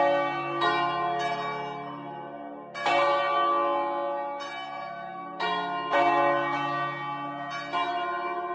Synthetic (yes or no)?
no